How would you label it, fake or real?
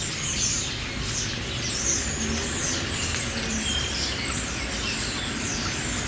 real